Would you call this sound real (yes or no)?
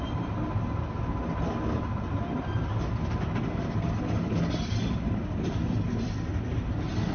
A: yes